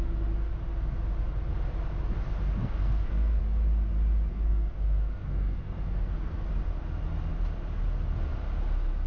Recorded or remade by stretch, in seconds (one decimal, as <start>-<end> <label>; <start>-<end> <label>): 0.0-2.6 recorded; 2.6-3.4 remade; 3.4-4.3 recorded; 4.3-6.5 remade; 6.5-9.1 recorded